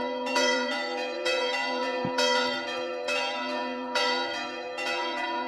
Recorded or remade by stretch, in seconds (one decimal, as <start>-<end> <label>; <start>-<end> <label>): 0.0-5.5 remade